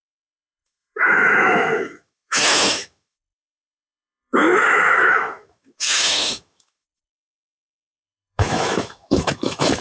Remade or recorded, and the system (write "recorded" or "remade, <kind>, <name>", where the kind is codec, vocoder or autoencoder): remade, autoencoder, DAC-VAE